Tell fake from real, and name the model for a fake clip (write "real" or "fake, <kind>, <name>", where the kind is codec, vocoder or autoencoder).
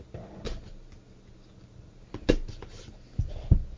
real